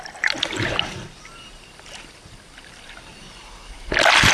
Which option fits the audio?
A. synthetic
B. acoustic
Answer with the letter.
B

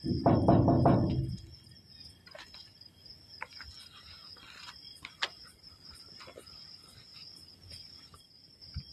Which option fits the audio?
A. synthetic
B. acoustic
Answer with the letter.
B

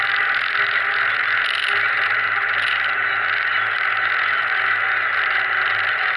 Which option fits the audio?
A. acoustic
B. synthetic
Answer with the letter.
A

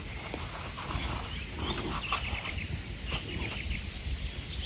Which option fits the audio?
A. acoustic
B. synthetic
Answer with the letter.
A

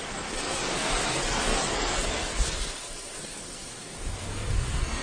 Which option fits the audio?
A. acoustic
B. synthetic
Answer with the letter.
B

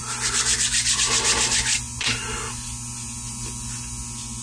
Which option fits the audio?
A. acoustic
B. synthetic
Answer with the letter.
A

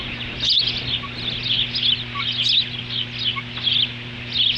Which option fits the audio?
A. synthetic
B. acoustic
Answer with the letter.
B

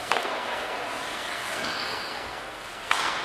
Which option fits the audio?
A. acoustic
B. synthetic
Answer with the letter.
B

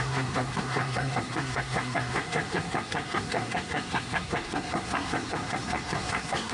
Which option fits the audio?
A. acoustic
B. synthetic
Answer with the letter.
B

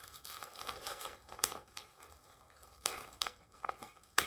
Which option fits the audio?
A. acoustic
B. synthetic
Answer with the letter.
B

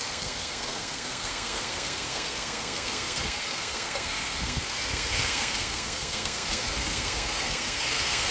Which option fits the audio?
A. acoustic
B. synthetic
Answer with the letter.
B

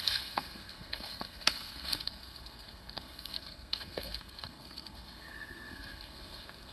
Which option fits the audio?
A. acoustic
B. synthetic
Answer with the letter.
B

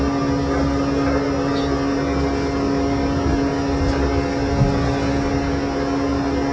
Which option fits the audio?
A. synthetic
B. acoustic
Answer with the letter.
B